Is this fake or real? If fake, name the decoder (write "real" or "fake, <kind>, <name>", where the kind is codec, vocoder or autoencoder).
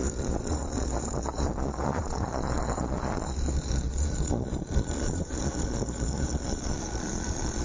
fake, vocoder, Vocos